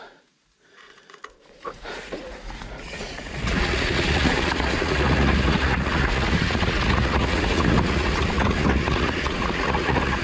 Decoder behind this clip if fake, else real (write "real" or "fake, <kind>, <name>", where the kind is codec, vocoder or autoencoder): fake, vocoder, Vocos